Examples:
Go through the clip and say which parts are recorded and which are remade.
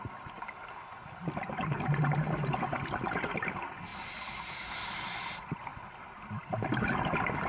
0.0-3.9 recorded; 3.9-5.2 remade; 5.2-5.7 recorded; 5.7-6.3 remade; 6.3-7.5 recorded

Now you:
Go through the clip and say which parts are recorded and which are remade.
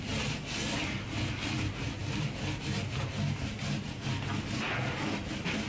0.0-5.7 recorded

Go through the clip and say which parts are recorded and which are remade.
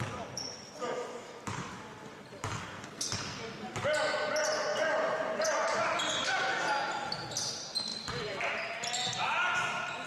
0.0-2.5 recorded; 2.5-3.4 remade; 3.4-10.1 recorded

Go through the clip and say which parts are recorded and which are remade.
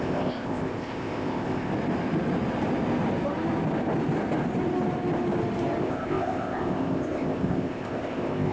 0.0-1.7 remade; 1.7-5.8 recorded; 5.8-8.5 remade